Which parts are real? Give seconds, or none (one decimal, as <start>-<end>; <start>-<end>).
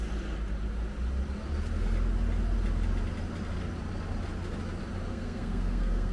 0.0-5.1